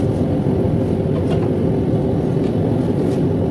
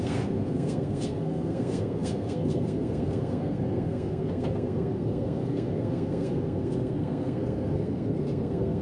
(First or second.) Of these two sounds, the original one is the first